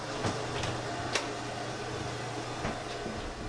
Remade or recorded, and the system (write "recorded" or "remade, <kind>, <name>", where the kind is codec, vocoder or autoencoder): recorded